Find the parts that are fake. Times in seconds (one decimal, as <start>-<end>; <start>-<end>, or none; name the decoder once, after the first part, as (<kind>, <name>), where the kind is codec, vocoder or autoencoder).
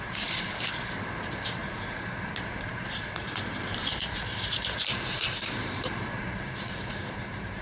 0.0-1.6 (vocoder, BigVGAN v2); 2.6-7.6